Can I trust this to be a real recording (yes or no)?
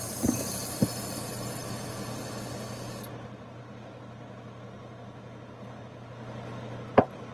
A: yes